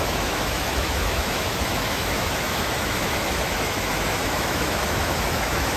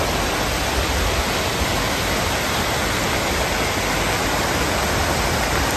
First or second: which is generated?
first